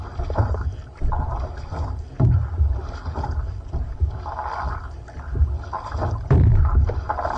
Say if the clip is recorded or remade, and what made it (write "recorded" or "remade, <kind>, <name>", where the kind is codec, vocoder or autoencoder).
recorded